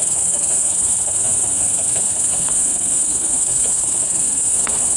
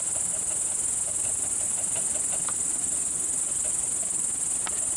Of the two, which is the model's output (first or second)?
first